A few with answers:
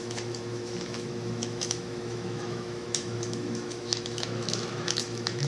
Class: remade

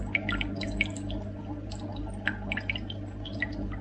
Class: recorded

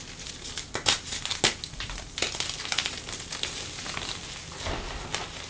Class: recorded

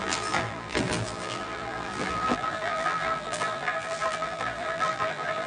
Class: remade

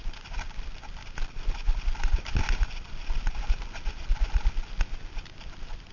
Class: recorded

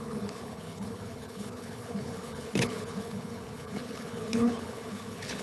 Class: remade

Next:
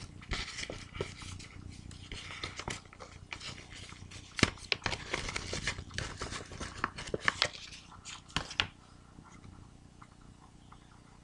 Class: recorded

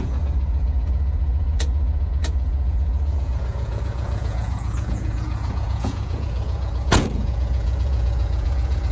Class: remade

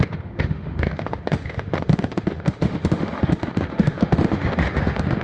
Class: remade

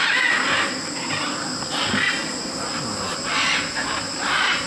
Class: recorded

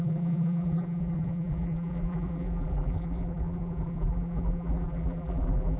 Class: remade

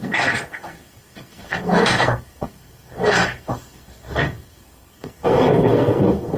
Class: remade